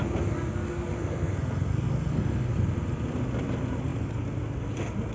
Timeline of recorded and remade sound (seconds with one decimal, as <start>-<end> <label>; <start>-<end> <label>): 0.0-0.7 recorded; 0.7-2.5 remade; 2.5-5.1 recorded

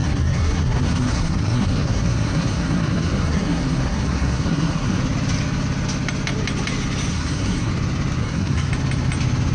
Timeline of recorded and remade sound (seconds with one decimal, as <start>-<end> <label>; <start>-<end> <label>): 0.0-5.0 remade; 5.0-7.1 recorded; 7.1-7.7 remade; 7.7-8.2 recorded; 8.2-8.7 remade; 8.7-9.5 recorded